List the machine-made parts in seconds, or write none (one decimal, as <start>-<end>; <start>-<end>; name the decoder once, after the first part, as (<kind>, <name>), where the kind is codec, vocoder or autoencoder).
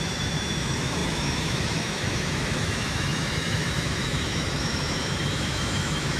0.0-6.2 (autoencoder, DAC-VAE)